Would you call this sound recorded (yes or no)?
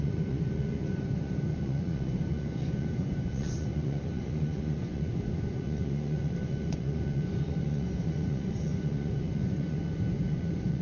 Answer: no